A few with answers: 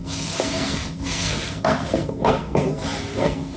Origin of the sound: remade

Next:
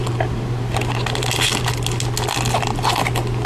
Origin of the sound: recorded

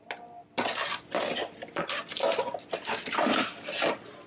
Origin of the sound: recorded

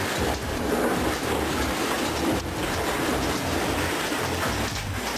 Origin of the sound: recorded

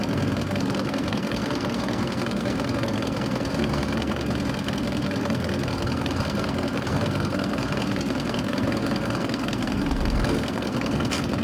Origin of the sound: remade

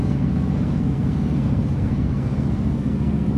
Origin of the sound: remade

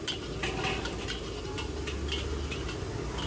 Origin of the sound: recorded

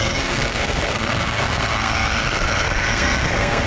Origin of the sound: remade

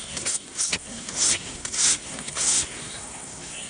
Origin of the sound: remade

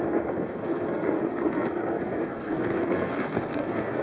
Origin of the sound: remade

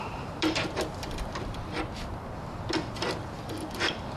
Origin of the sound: recorded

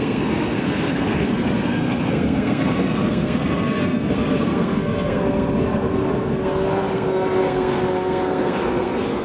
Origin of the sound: remade